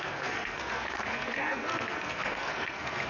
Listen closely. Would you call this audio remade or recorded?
remade